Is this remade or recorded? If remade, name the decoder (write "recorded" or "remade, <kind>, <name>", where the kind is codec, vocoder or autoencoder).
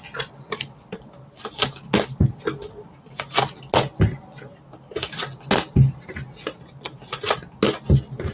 recorded